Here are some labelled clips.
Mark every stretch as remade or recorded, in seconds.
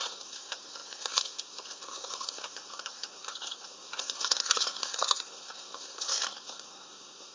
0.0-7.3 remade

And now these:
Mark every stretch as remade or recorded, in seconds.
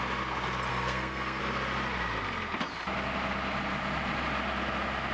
0.0-0.7 recorded; 0.7-1.4 remade; 1.4-5.1 recorded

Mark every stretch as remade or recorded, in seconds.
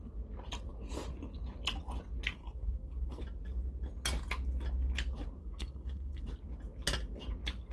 0.0-2.4 recorded; 2.4-3.2 remade; 3.2-5.4 recorded; 5.4-6.2 remade; 6.2-7.7 recorded